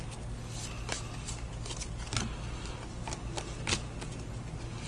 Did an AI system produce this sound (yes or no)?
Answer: no